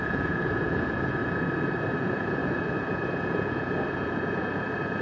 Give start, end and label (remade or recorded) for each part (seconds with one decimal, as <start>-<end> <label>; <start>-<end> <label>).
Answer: 0.0-1.2 remade; 1.2-2.0 recorded; 2.0-5.0 remade